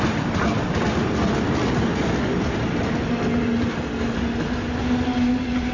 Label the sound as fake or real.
real